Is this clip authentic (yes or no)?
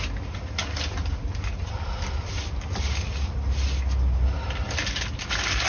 yes